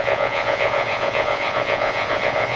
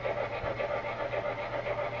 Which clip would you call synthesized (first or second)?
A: first